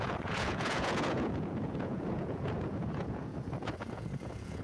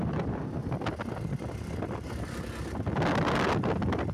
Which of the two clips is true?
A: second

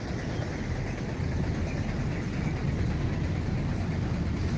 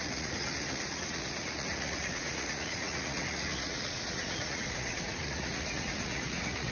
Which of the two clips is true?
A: first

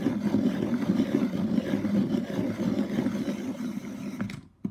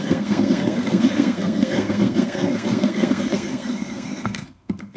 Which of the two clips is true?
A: first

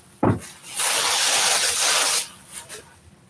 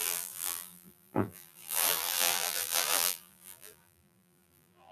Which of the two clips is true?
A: first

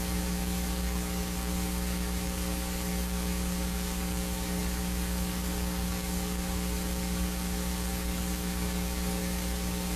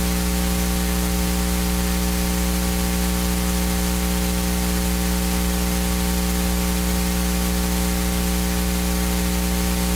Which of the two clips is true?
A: second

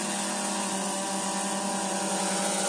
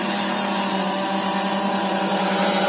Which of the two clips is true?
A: first